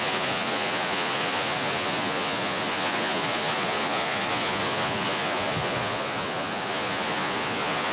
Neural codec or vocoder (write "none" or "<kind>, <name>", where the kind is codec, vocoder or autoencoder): vocoder, Vocos